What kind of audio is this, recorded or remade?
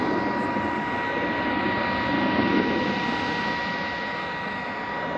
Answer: recorded